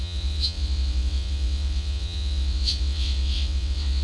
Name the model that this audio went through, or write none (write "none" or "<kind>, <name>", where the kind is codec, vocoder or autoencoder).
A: vocoder, WaveNeXt